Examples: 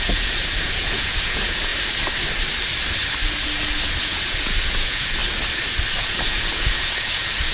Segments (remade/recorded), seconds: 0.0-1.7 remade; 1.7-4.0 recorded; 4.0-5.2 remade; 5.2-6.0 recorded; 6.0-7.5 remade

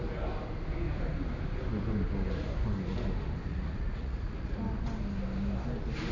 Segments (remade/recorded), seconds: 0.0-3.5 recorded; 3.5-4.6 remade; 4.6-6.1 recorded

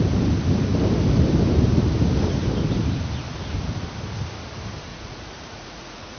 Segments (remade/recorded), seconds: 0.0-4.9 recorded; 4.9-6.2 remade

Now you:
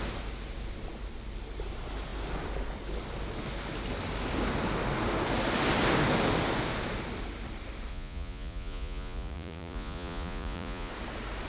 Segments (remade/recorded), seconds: 0.0-7.9 recorded; 7.9-10.9 remade; 10.9-11.5 recorded